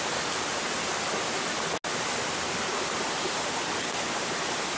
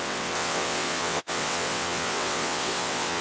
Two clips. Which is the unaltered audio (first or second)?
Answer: first